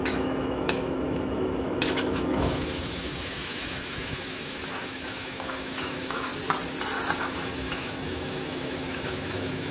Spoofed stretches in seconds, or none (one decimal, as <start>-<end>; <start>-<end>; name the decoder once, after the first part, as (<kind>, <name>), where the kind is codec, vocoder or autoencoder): 0.0-6.3 (autoencoder, DAC-VAE); 7.2-9.7